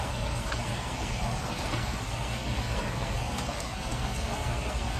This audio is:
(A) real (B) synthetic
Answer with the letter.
B